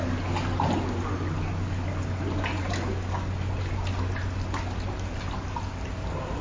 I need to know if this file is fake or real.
real